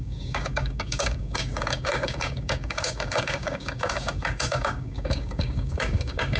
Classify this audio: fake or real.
fake